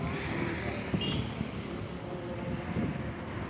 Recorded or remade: recorded